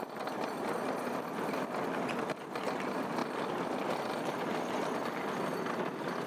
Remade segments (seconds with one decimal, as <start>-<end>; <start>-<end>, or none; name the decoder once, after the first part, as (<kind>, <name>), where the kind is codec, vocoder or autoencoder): none